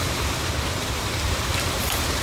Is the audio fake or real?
fake